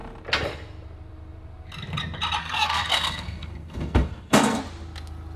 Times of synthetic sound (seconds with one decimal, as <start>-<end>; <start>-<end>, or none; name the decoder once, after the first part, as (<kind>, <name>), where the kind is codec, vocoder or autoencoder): 2.4-4.6 (codec, SNAC)